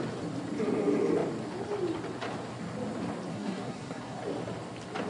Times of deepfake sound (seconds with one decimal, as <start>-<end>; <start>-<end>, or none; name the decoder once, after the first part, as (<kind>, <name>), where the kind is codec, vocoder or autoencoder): 3.3-4.2 (codec, SNAC)